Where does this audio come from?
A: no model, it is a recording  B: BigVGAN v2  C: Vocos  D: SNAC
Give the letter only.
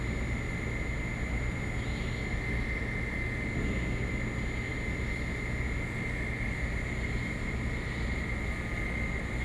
A